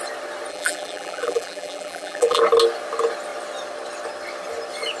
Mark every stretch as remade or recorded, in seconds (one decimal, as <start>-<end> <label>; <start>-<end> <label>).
0.0-0.5 recorded; 0.5-2.4 remade; 2.4-5.0 recorded